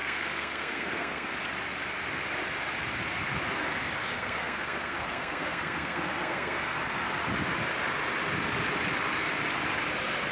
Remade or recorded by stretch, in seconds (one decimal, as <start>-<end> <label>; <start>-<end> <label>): 0.0-1.3 remade; 1.3-4.0 recorded; 4.0-6.8 remade; 6.8-10.3 recorded